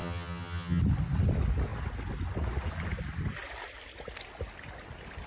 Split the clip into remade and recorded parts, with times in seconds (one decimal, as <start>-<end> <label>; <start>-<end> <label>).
0.0-0.8 remade; 0.8-5.3 recorded